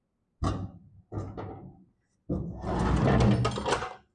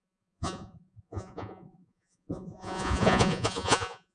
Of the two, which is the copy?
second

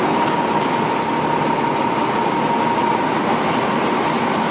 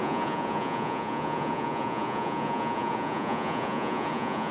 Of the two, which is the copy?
second